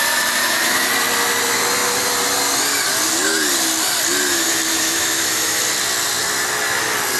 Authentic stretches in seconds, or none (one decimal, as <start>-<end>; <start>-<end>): 0.0-0.4; 0.9-4.7; 5.6-7.2